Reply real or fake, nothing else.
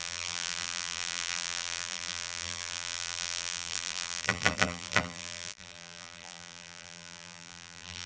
fake